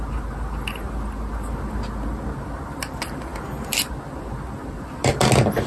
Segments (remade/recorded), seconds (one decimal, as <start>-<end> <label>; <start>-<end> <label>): 0.0-5.7 recorded